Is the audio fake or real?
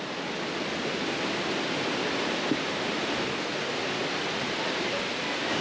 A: real